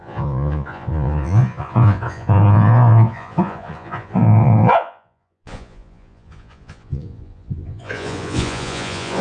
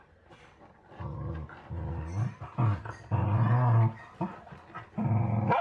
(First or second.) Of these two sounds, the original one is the second